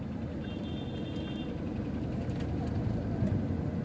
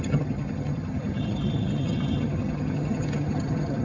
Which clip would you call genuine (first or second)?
first